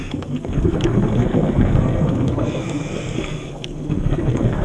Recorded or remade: remade